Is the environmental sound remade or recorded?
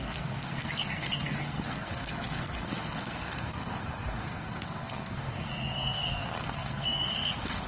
remade